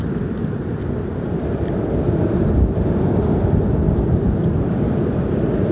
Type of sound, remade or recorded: recorded